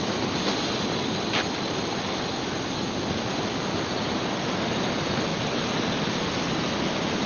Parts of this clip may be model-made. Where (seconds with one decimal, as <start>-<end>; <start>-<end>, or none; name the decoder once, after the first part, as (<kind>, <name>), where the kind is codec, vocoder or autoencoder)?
none